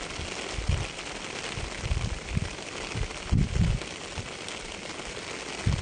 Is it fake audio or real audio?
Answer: real